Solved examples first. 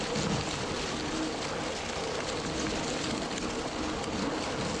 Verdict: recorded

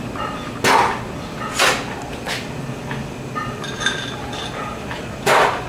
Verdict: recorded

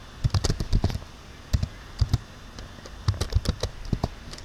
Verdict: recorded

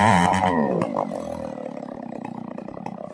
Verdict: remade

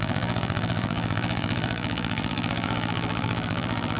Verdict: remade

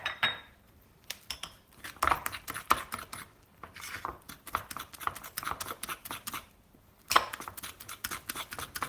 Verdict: remade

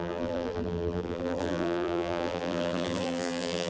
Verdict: remade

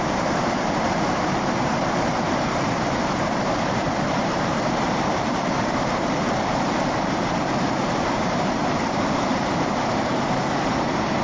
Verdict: remade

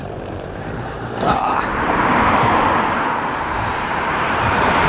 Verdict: remade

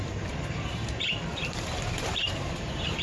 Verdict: remade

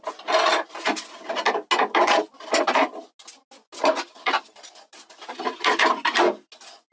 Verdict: recorded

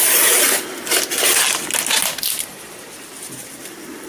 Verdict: recorded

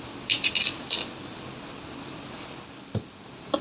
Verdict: recorded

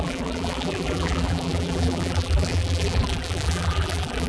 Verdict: remade